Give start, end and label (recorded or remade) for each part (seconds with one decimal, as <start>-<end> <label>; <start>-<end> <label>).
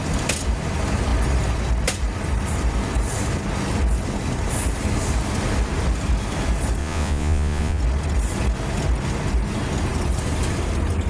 0.0-6.8 recorded; 6.8-7.8 remade; 7.8-11.1 recorded